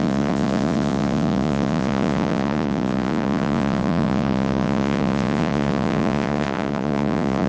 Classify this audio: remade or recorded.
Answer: remade